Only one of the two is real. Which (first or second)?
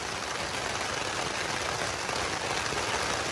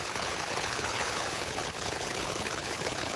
first